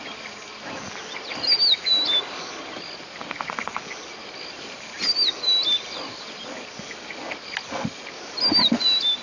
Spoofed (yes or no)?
no